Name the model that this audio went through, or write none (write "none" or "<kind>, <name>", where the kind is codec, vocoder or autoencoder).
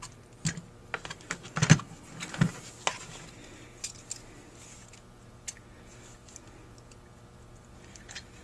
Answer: none